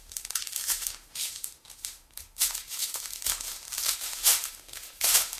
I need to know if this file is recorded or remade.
remade